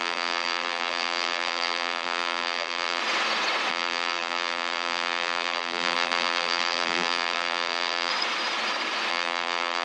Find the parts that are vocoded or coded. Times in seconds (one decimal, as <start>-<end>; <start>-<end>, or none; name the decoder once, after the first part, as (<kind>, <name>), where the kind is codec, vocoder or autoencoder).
0.0-3.0 (vocoder, BigVGAN v2); 3.7-8.1; 9.1-9.8